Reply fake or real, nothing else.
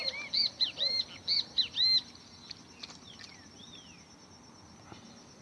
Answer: real